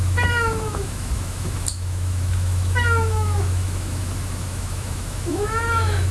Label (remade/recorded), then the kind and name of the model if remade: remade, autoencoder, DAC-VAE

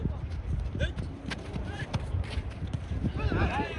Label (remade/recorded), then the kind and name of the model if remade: remade, vocoder, BigVGAN v2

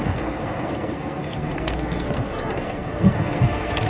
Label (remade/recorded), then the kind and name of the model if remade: remade, codec, SNAC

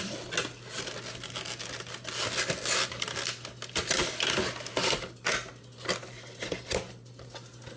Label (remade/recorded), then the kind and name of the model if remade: recorded